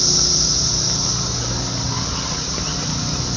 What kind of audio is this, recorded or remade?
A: recorded